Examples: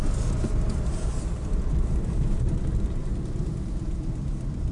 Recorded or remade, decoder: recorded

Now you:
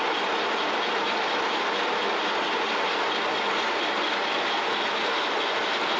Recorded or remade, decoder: recorded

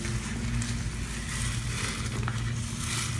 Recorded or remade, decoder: recorded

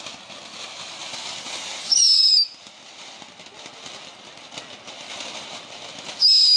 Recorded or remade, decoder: recorded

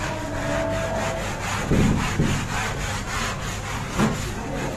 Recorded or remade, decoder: recorded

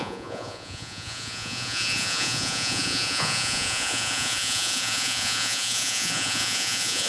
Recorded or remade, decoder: remade, vocoder, Vocos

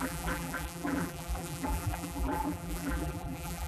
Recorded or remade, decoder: remade, vocoder, BigVGAN v2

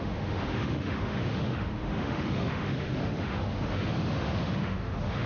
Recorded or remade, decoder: remade, autoencoder, DAC-VAE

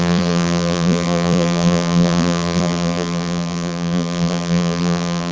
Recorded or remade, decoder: remade, vocoder, BigVGAN v2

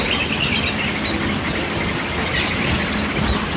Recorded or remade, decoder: recorded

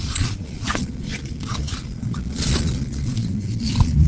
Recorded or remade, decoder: remade, vocoder, Vocos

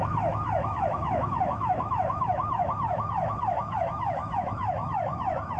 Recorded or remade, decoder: remade, autoencoder, DAC-VAE